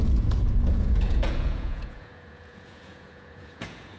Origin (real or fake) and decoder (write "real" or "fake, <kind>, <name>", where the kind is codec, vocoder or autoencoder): fake, vocoder, Vocos